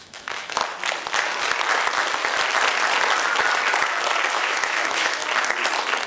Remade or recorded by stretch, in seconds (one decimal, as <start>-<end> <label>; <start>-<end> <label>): 0.0-0.6 remade; 0.6-4.3 recorded; 4.3-5.2 remade; 5.2-6.1 recorded

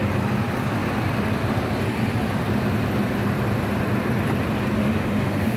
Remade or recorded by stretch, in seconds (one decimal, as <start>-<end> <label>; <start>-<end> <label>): 0.0-4.8 recorded; 4.8-5.6 remade